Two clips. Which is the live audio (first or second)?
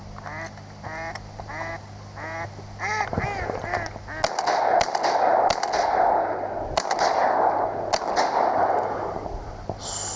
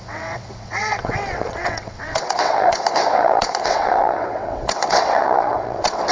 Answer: first